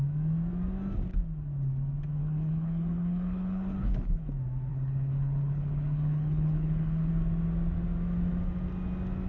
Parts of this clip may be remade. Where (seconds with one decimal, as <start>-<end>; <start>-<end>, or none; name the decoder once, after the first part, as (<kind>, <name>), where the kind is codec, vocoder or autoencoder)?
2.2-4.3 (codec, HILCodec); 4.7-7.1